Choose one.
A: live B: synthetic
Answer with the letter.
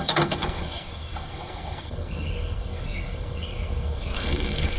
B